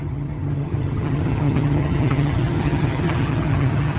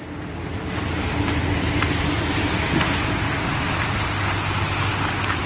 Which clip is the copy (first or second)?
first